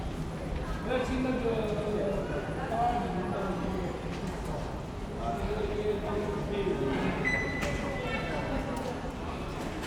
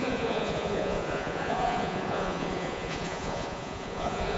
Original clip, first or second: first